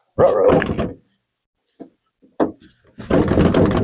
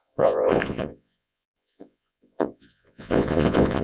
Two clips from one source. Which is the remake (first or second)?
second